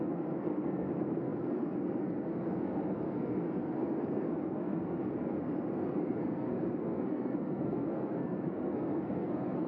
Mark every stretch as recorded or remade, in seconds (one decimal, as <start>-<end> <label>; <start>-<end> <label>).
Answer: 0.0-9.7 remade